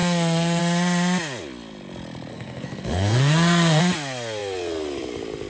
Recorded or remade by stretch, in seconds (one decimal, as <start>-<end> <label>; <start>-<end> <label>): 0.0-0.6 remade; 0.6-2.3 recorded; 2.3-3.8 remade; 3.8-5.5 recorded